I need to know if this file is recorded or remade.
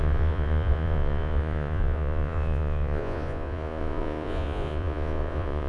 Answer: remade